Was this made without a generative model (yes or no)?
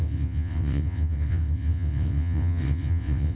no